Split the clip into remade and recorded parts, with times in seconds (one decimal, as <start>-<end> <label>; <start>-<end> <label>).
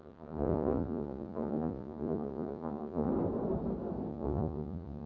0.0-3.1 remade; 3.1-4.1 recorded; 4.1-5.1 remade